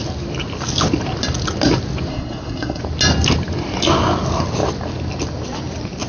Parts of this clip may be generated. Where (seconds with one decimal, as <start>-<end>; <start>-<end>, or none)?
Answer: 2.1-2.8